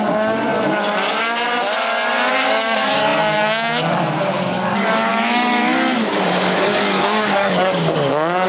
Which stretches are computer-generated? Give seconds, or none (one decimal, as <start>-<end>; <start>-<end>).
0.0-0.5; 2.3-8.5